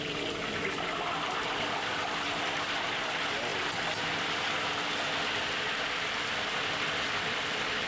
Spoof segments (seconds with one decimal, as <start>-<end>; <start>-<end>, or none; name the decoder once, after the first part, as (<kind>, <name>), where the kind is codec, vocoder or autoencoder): none